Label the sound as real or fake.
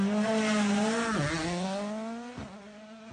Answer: real